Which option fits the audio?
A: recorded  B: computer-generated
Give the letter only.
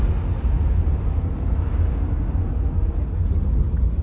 A